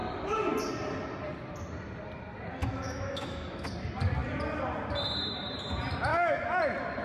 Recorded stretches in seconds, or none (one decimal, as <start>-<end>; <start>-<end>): 0.0-2.6; 3.7-6.1; 6.6-7.0